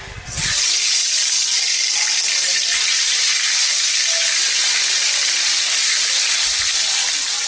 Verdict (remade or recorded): recorded